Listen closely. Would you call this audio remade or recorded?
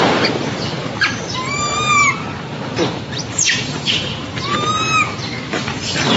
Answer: remade